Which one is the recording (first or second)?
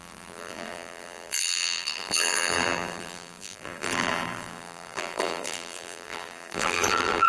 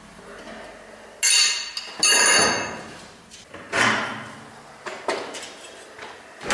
second